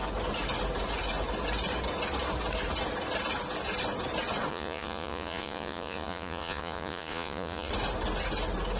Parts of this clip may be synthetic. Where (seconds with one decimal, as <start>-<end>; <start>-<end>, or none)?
4.5-7.7